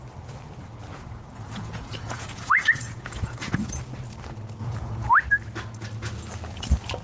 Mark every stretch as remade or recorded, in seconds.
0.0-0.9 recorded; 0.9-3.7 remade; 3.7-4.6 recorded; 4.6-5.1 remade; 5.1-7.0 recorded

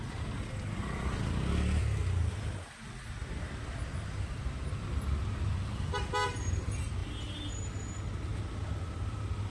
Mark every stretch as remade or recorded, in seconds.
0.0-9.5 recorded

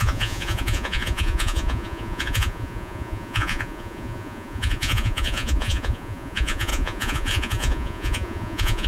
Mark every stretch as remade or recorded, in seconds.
0.0-8.9 remade

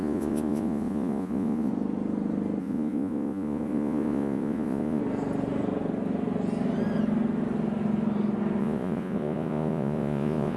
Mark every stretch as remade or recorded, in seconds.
0.0-1.7 remade; 1.7-2.6 recorded; 2.6-5.0 remade; 5.0-8.6 recorded; 8.6-10.6 remade